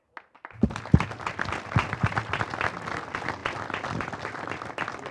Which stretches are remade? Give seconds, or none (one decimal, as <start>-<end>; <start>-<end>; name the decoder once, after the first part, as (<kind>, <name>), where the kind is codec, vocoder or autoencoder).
1.8-2.3 (vocoder, BigVGAN v2)